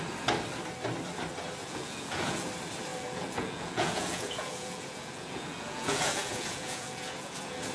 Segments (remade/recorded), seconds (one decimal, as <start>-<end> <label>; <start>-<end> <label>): 0.0-1.6 recorded; 1.6-2.5 remade; 2.5-2.9 recorded; 2.9-7.7 remade